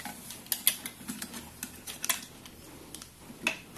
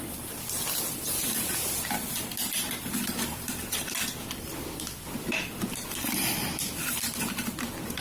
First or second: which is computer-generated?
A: second